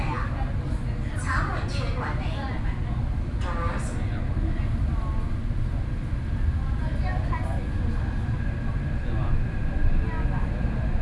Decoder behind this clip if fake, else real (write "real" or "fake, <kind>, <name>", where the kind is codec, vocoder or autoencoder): real